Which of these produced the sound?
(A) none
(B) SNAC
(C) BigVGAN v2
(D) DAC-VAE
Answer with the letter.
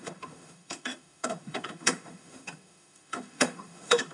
D